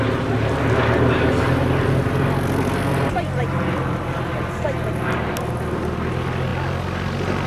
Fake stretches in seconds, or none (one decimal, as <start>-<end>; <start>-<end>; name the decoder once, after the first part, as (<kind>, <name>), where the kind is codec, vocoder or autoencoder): none